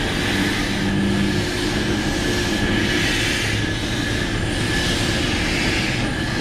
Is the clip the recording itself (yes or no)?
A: yes